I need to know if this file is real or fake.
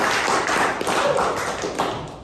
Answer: real